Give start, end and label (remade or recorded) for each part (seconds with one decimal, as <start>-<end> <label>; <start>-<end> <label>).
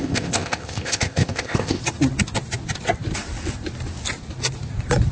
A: 0.0-1.8 remade; 1.8-5.1 recorded